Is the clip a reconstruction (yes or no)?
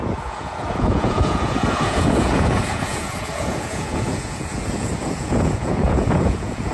yes